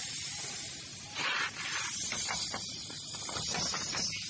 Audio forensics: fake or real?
real